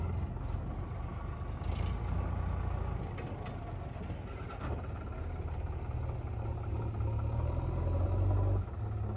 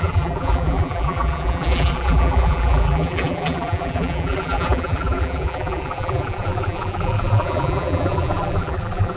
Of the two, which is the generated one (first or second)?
second